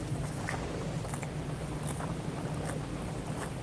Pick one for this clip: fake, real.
real